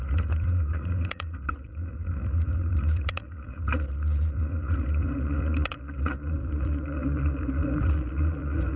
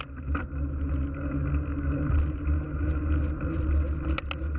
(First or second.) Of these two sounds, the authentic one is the second